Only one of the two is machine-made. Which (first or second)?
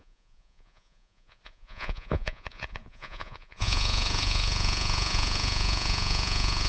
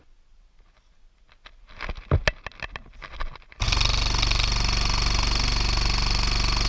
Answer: first